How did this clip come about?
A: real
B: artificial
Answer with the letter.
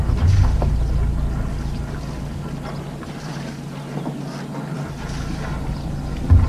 A